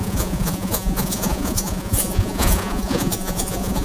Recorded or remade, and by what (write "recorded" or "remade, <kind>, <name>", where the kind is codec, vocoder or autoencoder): remade, vocoder, Vocos